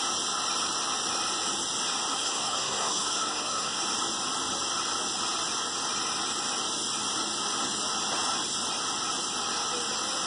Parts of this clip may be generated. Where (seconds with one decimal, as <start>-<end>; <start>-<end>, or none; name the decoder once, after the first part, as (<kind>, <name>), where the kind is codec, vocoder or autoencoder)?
2.1-3.8 (codec, SNAC)